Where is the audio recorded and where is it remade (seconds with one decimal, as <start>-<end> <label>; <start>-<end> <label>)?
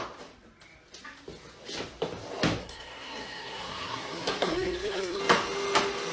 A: 0.0-2.6 recorded; 2.6-5.2 remade; 5.2-6.1 recorded